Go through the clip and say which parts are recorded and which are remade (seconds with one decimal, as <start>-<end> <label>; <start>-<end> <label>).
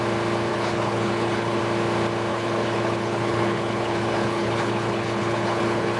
0.0-0.5 recorded; 0.5-1.6 remade; 1.6-2.3 recorded; 2.3-6.0 remade